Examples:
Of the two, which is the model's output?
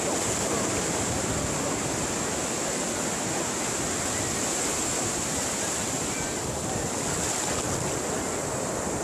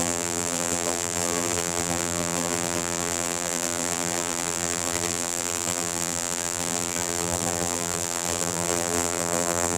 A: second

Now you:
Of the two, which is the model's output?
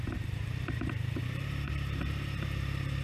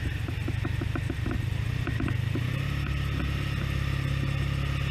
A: first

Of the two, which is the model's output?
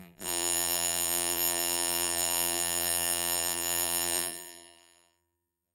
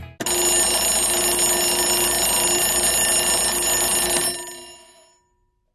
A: first